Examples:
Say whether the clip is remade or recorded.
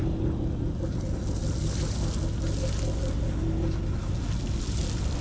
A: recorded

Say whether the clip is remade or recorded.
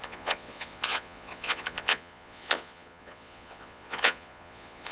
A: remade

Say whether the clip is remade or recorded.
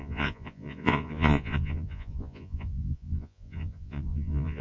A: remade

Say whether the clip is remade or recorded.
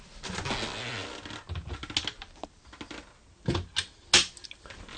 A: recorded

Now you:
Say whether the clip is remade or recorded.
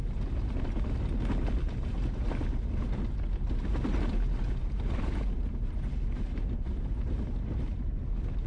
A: recorded